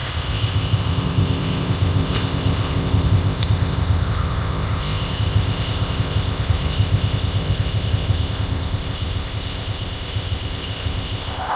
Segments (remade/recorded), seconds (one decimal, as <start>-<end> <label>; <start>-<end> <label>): 0.0-11.6 remade